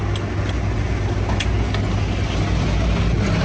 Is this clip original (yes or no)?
yes